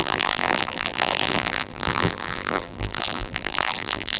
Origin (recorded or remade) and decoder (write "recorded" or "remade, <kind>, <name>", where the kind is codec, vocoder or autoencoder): remade, vocoder, BigVGAN v2